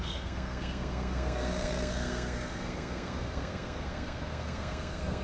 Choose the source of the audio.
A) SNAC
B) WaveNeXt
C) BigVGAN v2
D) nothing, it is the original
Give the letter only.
A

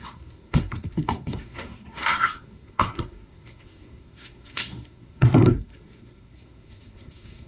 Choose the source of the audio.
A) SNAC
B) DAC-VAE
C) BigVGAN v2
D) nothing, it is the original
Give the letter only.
A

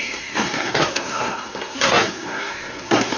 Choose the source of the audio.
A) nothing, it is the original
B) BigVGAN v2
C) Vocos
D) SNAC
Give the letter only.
D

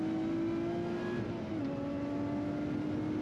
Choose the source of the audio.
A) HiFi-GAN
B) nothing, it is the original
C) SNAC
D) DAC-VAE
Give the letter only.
B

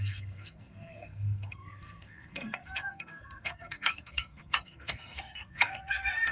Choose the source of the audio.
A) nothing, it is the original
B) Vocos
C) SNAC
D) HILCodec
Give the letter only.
C